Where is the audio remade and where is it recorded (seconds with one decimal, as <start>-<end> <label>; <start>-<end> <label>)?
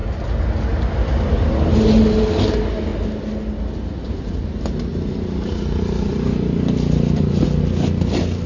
0.0-4.9 recorded; 4.9-7.6 remade; 7.6-8.5 recorded